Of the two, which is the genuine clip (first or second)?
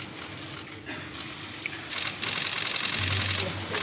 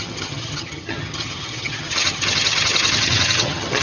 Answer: first